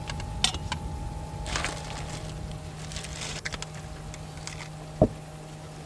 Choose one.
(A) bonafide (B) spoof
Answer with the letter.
A